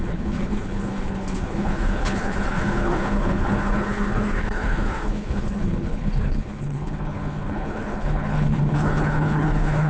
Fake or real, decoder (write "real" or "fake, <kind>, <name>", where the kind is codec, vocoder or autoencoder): fake, codec, HILCodec